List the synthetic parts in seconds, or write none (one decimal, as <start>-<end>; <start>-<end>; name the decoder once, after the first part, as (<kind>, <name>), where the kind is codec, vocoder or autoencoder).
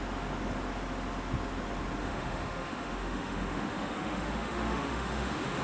2.0-5.6 (autoencoder, DAC-VAE)